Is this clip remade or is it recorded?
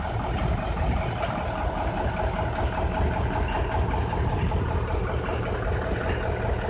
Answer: recorded